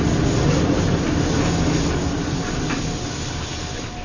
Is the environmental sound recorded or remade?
recorded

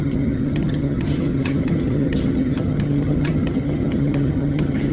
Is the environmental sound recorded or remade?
remade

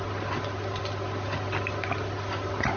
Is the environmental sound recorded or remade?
recorded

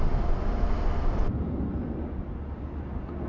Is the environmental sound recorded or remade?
recorded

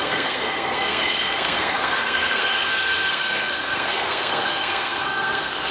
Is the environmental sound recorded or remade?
remade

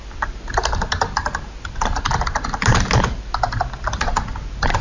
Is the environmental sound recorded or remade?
recorded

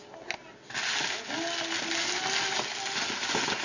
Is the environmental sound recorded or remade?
recorded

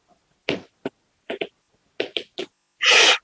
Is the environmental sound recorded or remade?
recorded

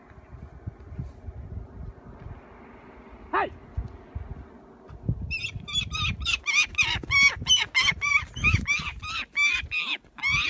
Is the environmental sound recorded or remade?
recorded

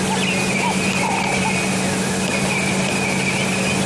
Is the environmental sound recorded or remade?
recorded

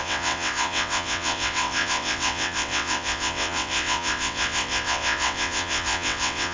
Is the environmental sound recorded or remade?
remade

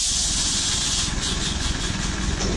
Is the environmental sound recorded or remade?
remade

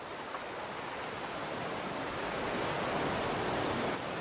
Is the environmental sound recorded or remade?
recorded